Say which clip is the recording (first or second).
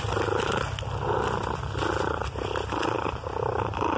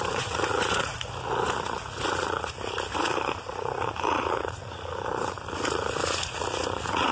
first